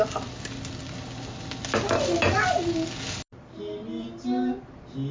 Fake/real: real